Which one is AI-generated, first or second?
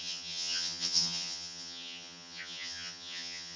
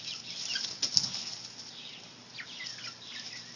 first